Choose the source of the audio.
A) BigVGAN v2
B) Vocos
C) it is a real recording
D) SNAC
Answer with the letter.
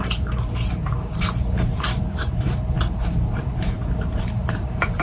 A